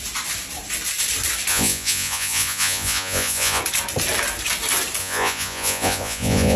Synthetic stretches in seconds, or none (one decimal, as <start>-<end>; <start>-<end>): 1.5-3.6; 5.0-6.6